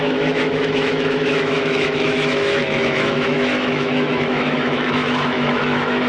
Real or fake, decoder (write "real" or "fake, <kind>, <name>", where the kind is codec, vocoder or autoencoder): fake, autoencoder, DAC-VAE